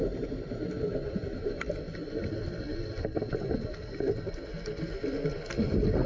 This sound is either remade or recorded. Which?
recorded